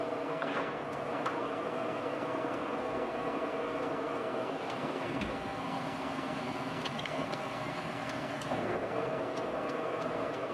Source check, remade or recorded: remade